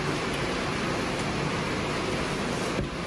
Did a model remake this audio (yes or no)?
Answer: no